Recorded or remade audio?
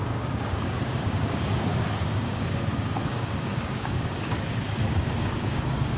remade